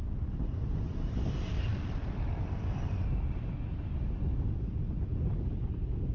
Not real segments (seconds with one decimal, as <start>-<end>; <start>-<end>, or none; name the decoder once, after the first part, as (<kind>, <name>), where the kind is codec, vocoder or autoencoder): none

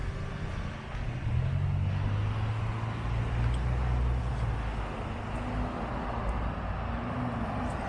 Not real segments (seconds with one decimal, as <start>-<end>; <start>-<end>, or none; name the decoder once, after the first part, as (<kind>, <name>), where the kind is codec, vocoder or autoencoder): none

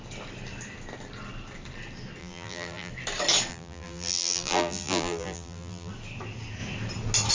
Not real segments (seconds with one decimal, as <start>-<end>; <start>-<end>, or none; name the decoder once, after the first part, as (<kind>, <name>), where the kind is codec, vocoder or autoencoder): 2.2-2.9 (vocoder, BigVGAN v2); 3.5-5.9

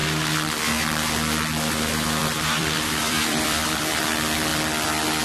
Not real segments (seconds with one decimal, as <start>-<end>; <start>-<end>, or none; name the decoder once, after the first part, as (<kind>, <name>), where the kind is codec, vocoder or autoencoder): 2.2-4.0 (vocoder, BigVGAN v2)

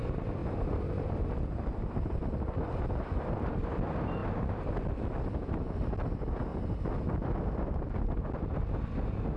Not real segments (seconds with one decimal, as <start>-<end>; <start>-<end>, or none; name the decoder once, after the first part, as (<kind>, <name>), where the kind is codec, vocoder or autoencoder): 0.4-3.2 (vocoder, BigVGAN v2); 6.5-8.4